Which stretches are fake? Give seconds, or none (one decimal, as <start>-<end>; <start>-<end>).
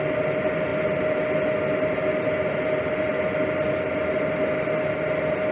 none